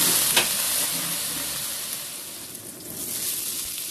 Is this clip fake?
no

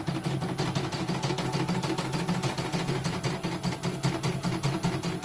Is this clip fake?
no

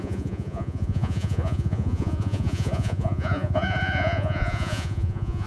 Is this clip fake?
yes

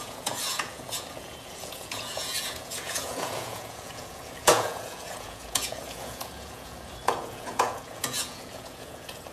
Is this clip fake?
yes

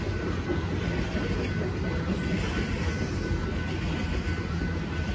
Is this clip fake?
no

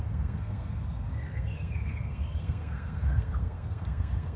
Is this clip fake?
yes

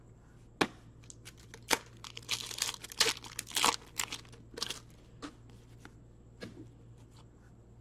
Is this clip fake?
no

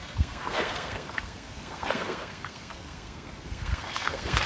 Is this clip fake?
yes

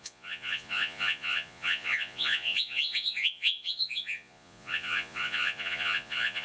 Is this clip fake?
yes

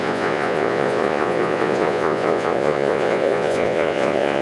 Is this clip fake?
yes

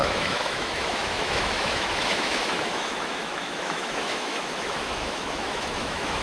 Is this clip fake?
yes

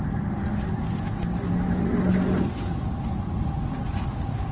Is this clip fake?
no